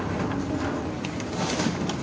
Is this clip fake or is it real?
real